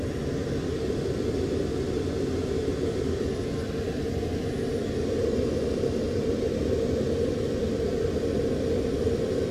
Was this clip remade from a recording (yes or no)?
no